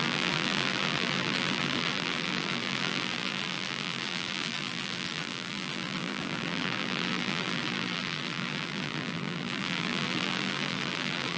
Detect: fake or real fake